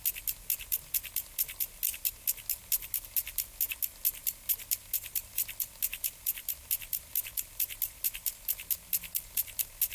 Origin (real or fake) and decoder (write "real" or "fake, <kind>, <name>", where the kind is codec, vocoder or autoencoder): real